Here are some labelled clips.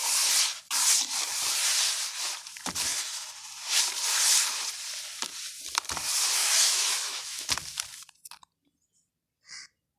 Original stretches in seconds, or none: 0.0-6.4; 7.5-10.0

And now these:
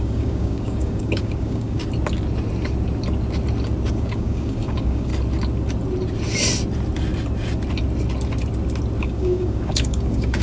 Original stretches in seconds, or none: 1.8-3.9; 5.1-9.0

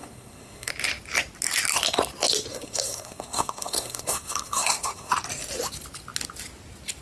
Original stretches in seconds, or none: 0.7-2.5; 5.1-7.0

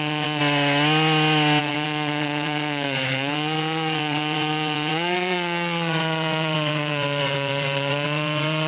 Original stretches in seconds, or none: 0.4-1.6

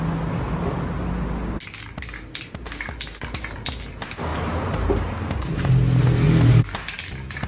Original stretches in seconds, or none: 0.0-4.3; 5.7-7.5